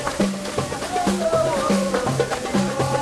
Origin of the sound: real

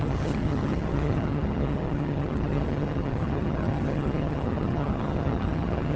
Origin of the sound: fake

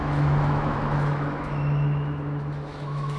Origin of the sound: fake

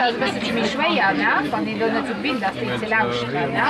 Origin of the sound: real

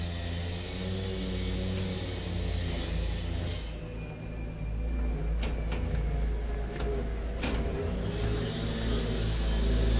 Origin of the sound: real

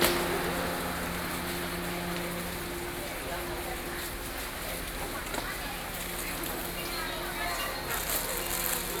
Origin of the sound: real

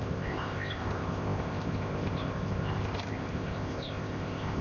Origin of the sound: fake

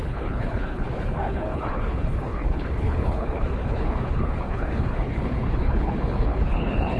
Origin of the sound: fake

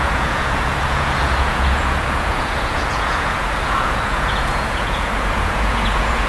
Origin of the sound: fake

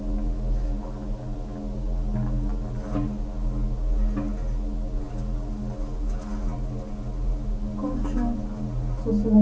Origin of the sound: real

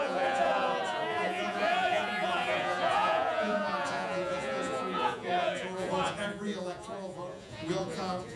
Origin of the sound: fake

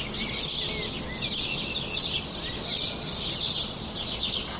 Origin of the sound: real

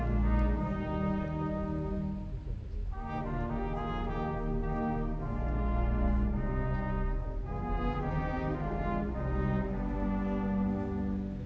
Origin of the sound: real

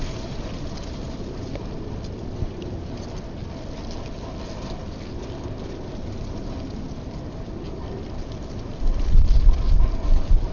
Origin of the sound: real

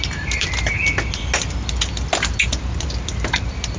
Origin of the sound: real